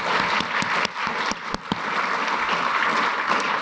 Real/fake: real